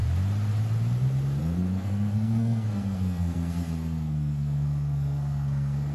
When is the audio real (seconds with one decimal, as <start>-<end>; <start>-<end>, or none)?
0.0-1.4